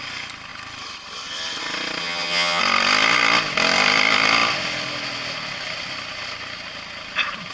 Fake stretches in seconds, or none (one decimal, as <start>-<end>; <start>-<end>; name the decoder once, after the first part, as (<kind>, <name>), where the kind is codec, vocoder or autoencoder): 2.0-2.6 (vocoder, HiFi-GAN)